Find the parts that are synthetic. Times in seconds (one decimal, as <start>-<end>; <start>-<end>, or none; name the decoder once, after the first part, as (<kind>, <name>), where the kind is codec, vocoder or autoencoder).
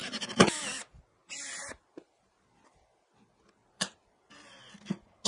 0.0-0.6 (vocoder, BigVGAN v2); 1.2-2.3; 3.6-4.3